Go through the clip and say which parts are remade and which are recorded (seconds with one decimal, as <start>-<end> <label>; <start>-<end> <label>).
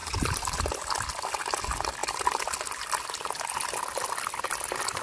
0.0-0.9 remade; 0.9-5.0 recorded